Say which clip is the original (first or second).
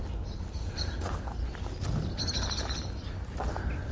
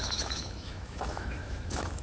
first